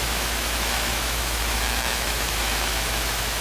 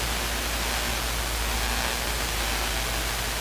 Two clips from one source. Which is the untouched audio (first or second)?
second